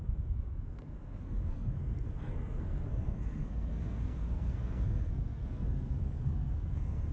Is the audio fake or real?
fake